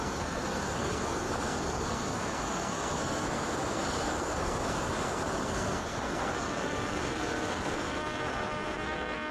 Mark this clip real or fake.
fake